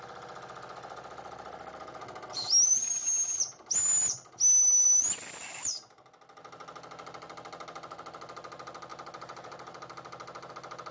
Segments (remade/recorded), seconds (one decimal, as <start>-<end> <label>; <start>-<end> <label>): 0.0-10.9 recorded